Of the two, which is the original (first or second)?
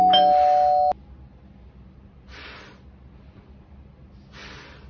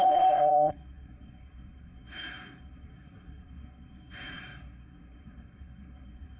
first